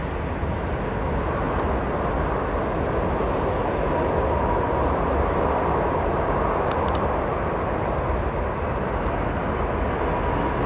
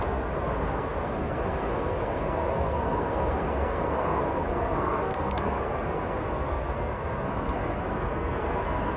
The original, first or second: first